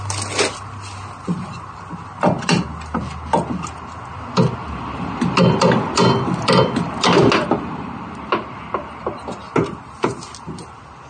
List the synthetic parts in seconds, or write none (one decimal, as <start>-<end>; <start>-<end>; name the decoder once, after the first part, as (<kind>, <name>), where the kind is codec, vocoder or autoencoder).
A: none